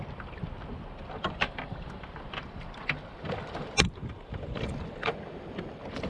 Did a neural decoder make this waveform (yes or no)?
yes